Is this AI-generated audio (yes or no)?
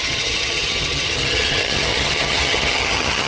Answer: yes